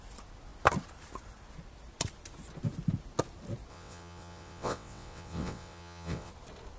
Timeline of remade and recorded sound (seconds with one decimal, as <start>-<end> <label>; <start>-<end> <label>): 0.0-3.7 recorded; 3.7-6.3 remade; 6.3-6.8 recorded